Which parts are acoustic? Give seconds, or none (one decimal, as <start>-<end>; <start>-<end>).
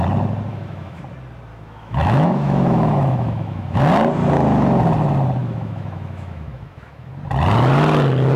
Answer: 0.0-0.5; 1.0-1.5; 3.8-5.4; 7.1-8.4